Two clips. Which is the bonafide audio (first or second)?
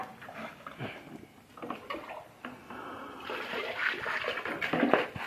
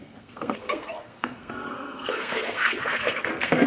first